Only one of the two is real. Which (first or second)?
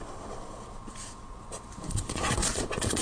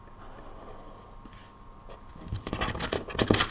second